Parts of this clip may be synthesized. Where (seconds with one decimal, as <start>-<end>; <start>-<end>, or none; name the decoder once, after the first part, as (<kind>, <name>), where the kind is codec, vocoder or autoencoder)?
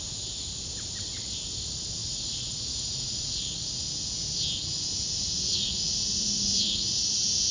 2.0-3.8 (vocoder, Vocos); 5.5-7.0